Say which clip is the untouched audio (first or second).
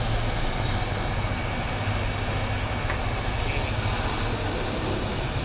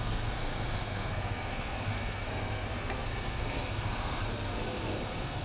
first